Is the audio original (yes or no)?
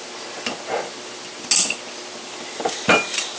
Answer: yes